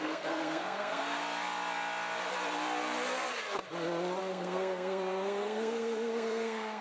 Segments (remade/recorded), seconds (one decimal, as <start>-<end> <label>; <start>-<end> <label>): 0.0-1.2 remade; 1.2-4.2 recorded; 4.2-6.8 remade